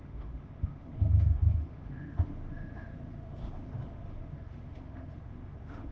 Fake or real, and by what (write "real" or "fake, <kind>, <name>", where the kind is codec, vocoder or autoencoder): fake, autoencoder, DAC-VAE